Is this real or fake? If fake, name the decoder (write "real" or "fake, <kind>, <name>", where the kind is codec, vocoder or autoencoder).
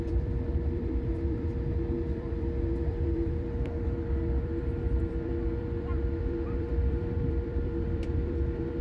fake, vocoder, BigVGAN v2